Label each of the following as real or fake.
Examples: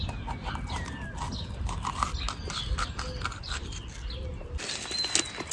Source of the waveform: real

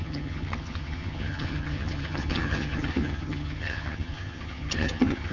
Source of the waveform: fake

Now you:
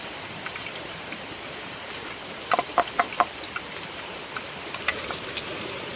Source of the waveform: real